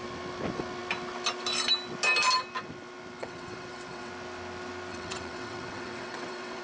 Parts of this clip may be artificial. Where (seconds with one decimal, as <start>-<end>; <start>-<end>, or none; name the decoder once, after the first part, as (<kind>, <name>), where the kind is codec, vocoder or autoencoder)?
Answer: 3.2-4.1 (vocoder, WaveNeXt); 4.9-6.6